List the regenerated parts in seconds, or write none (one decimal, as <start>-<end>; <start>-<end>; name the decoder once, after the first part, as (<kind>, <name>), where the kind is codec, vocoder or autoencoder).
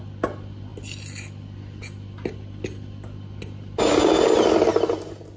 none